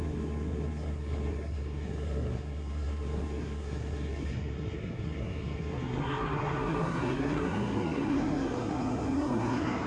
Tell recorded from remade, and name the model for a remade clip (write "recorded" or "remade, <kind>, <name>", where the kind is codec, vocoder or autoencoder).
remade, codec, SNAC